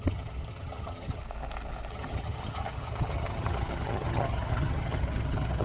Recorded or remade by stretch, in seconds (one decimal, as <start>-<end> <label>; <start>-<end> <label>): 0.0-1.2 remade; 1.2-1.9 recorded; 1.9-5.6 remade